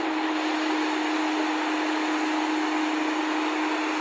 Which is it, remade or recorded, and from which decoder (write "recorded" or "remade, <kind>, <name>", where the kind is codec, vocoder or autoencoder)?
recorded